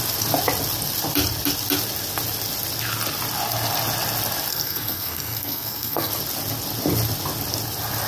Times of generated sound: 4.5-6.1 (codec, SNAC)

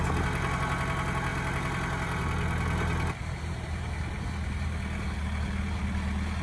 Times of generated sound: none

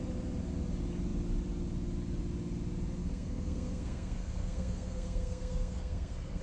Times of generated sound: 3.0-6.4 (codec, SNAC)

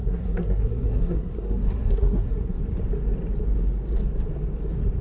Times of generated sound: 0.0-2.6 (codec, SNAC)

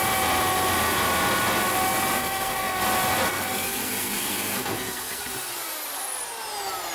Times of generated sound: 2.2-2.8 (codec, SNAC); 3.3-5.2

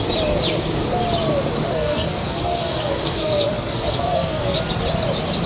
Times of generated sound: 1.7-4.6 (codec, SNAC)